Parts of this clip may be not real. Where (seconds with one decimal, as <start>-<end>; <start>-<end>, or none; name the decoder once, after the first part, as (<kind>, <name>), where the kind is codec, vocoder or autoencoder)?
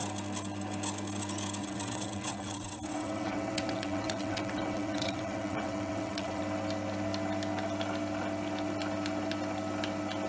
1.6-6.4 (vocoder, WaveNeXt)